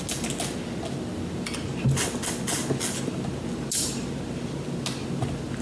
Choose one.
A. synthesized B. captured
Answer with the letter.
B